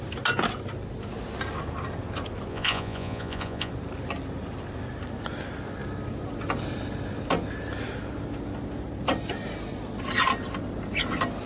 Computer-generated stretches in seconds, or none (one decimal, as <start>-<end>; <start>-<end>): 2.5-3.7